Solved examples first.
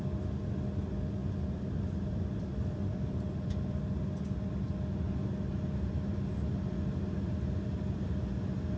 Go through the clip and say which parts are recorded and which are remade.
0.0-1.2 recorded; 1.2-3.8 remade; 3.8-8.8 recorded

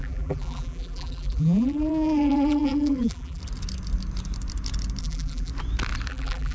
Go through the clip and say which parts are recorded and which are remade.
0.0-3.4 remade; 3.4-5.0 recorded; 5.0-5.5 remade; 5.5-6.1 recorded; 6.1-6.5 remade